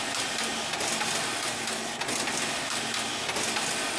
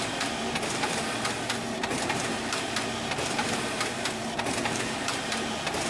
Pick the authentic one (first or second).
first